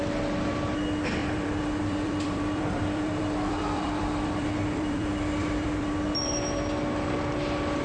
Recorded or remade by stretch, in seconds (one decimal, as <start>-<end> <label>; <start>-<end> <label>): 0.0-1.2 recorded; 1.2-5.9 remade; 5.9-7.8 recorded